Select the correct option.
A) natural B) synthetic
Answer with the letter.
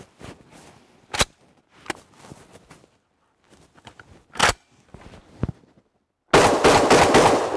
A